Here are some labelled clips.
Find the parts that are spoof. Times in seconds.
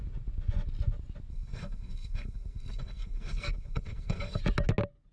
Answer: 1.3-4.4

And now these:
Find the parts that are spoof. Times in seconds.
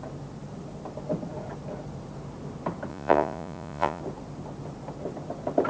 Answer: 2.9-4.0